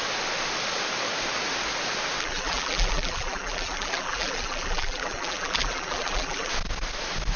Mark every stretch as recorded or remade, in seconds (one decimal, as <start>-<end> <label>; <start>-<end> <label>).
0.0-2.2 recorded; 2.2-6.5 remade; 6.5-7.4 recorded